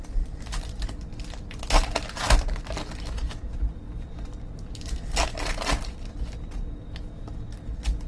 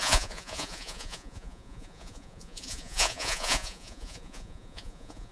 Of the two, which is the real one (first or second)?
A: first